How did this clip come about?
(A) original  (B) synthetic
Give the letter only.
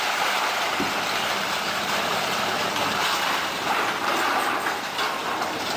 B